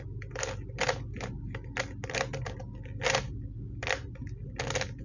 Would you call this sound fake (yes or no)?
no